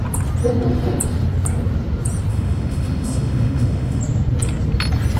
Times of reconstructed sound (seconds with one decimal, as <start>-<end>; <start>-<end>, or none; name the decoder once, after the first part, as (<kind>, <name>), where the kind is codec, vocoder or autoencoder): 2.3-4.0 (autoencoder, DAC-VAE)